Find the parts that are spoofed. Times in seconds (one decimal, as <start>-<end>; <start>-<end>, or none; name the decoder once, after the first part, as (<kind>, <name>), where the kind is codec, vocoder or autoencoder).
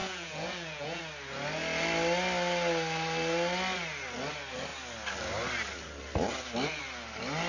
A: 0.0-1.0 (vocoder, Vocos)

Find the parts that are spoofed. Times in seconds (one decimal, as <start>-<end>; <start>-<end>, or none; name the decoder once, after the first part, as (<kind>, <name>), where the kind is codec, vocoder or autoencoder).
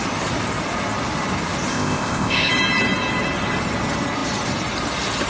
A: 1.7-2.5 (codec, ZipCodec)